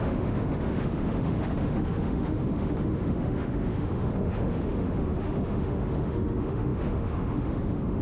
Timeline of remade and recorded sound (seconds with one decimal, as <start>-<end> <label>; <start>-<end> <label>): 0.0-8.0 remade